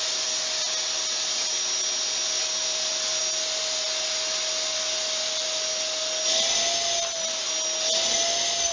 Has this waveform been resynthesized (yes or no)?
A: no